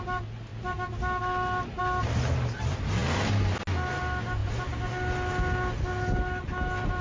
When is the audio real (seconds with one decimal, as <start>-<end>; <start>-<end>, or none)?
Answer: 0.0-7.0